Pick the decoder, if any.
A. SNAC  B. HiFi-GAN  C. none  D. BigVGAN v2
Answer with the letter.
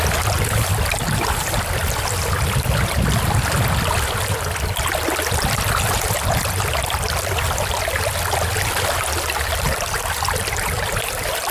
C